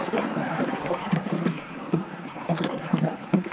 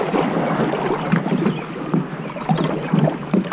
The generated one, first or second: first